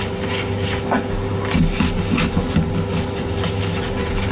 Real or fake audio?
real